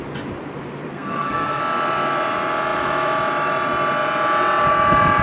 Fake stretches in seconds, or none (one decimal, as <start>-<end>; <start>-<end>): 0.9-1.6